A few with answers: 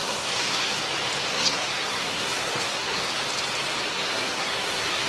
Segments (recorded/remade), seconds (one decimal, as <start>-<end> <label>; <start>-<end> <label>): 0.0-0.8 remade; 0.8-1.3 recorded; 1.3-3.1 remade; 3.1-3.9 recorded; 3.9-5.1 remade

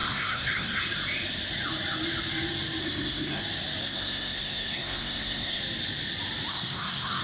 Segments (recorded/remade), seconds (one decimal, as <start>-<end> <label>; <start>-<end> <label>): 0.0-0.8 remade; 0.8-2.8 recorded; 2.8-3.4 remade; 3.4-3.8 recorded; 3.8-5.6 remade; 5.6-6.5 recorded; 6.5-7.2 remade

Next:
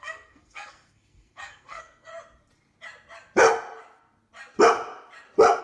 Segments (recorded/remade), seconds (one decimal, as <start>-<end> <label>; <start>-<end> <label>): 0.0-2.1 remade; 2.1-5.6 recorded

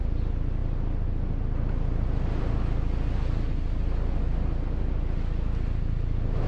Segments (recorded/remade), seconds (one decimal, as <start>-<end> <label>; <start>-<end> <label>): 0.0-6.5 recorded

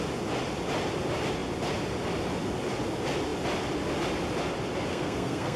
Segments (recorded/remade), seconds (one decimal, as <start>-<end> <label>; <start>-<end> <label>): 0.0-4.9 recorded; 4.9-5.6 remade

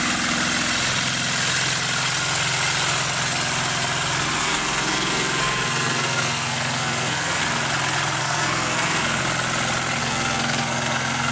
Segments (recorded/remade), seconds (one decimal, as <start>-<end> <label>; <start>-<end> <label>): 0.0-4.4 recorded; 4.4-7.4 remade; 7.4-8.2 recorded; 8.2-9.2 remade; 9.2-10.0 recorded; 10.0-11.3 remade

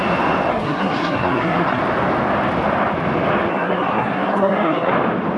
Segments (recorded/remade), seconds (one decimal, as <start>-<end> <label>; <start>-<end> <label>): 0.0-0.5 recorded; 0.5-1.8 remade; 1.8-3.5 recorded; 3.5-4.9 remade; 4.9-5.4 recorded

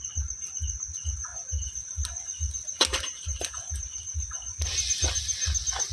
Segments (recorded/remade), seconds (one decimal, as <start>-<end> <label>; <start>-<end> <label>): 0.0-5.9 recorded